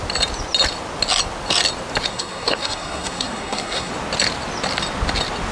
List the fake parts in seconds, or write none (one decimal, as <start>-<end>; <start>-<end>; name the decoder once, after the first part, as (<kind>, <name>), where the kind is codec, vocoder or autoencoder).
2.1-3.9 (codec, SNAC)